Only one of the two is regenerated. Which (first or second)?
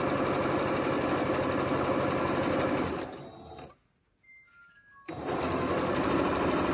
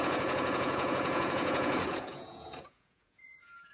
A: second